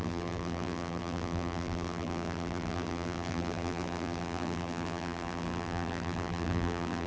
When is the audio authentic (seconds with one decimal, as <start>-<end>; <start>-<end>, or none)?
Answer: none